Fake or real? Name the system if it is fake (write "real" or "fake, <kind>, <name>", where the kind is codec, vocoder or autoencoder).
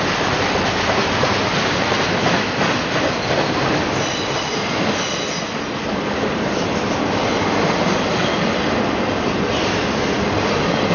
real